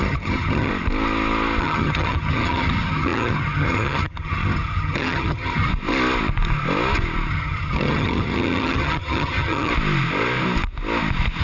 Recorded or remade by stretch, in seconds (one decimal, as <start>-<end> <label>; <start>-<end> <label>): 0.0-0.7 remade; 0.7-1.6 recorded; 1.6-5.7 remade; 5.7-7.3 recorded; 7.3-9.7 remade; 9.7-11.4 recorded